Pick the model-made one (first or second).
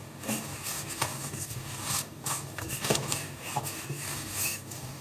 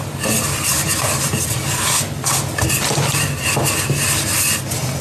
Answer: first